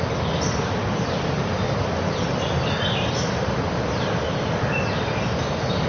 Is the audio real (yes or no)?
yes